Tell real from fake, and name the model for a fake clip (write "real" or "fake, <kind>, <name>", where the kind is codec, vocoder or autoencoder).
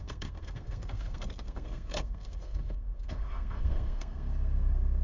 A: fake, codec, SNAC